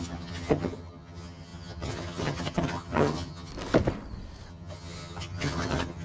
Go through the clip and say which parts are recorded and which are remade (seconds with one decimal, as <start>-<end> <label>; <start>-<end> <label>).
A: 0.0-3.5 remade; 3.5-4.5 recorded; 4.5-6.0 remade